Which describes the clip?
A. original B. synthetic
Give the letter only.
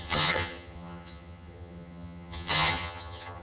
B